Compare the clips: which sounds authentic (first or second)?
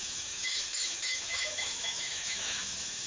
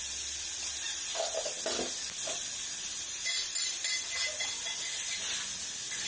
second